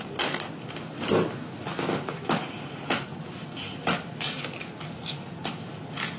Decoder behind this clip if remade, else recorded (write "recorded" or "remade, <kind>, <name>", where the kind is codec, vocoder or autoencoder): recorded